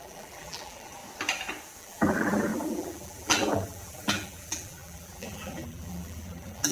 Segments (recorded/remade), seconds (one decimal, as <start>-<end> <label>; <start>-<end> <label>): 0.0-1.0 remade; 1.0-1.8 recorded; 1.8-6.7 remade